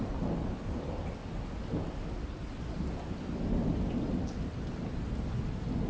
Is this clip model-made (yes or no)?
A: no